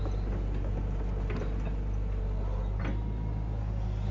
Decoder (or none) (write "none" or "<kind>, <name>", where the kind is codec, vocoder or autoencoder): none